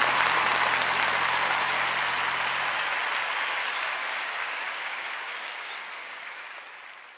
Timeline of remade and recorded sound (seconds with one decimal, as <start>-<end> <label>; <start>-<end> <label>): 0.0-3.6 recorded; 3.6-6.6 remade; 6.6-7.2 recorded